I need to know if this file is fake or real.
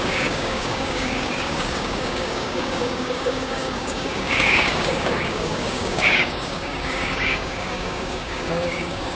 fake